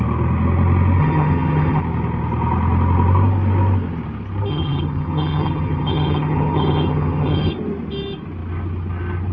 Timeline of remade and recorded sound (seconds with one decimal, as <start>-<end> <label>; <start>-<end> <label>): 0.0-1.0 recorded; 1.0-1.8 remade; 1.8-4.5 recorded; 4.5-7.5 remade; 7.5-9.3 recorded